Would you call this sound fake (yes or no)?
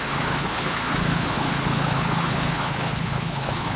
yes